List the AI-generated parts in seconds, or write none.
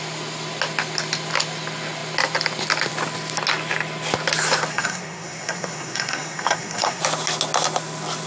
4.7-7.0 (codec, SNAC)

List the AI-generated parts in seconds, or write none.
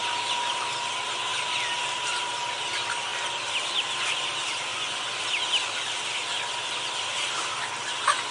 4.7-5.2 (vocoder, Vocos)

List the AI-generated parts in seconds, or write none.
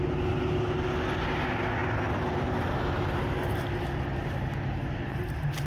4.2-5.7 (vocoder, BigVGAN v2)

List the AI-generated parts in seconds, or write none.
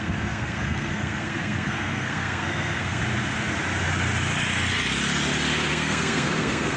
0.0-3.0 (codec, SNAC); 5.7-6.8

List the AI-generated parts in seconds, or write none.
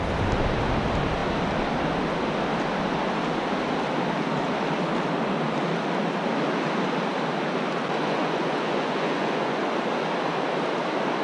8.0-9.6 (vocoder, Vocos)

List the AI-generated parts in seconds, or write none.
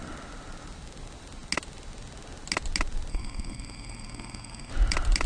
3.1-4.7 (codec, SNAC)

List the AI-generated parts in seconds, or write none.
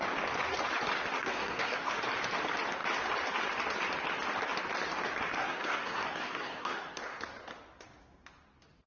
1.2-1.9 (codec, SNAC); 5.4-7.2